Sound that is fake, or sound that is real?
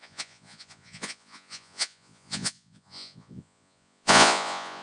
fake